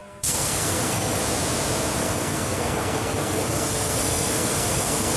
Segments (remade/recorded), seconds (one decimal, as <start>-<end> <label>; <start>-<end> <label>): 0.0-1.2 remade; 1.2-2.0 recorded; 2.0-5.2 remade